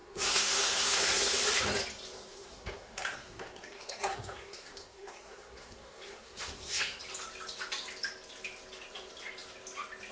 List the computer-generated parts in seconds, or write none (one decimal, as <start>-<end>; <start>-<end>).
0.0-1.3; 2.3-7.0